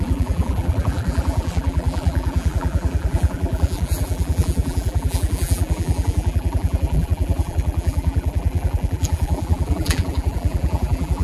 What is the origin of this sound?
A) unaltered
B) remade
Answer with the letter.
B